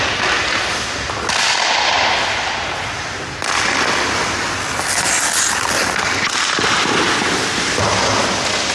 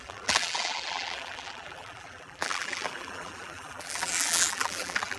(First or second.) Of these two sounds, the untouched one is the first